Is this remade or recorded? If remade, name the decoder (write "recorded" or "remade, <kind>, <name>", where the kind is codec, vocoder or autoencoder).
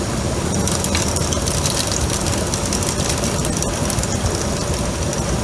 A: recorded